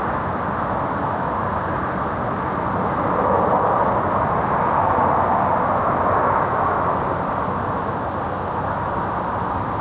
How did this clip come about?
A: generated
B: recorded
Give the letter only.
B